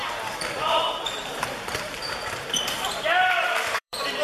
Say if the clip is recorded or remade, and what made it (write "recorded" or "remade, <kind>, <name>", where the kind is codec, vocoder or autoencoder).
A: remade, vocoder, BigVGAN v2